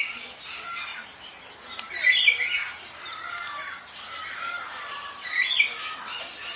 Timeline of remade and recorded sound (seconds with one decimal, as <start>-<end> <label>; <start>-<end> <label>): 0.0-6.6 recorded